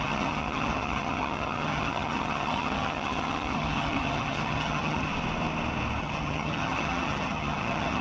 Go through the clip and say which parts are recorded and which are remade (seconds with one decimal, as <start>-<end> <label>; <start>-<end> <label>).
0.0-5.1 remade; 5.1-6.0 recorded; 6.0-8.0 remade